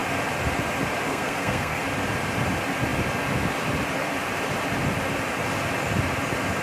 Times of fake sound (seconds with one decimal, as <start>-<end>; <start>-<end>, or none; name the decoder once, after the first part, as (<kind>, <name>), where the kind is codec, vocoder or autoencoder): 1.1-1.8 (codec, SNAC)